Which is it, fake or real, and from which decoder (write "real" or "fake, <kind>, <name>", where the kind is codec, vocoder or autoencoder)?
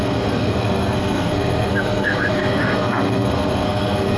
fake, codec, SNAC